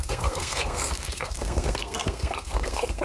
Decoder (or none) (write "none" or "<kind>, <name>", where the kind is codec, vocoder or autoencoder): codec, SNAC